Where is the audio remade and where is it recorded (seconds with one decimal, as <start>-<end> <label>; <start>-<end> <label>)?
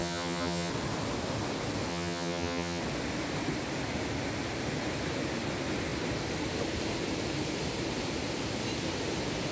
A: 0.0-0.7 remade; 0.7-1.9 recorded; 1.9-2.8 remade; 2.8-9.5 recorded